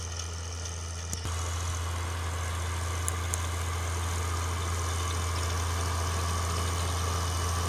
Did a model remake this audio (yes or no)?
no